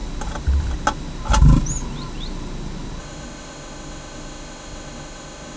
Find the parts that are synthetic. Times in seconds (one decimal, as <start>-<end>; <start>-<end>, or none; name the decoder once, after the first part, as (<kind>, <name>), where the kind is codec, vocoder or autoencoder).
3.0-5.6 (autoencoder, DAC-VAE)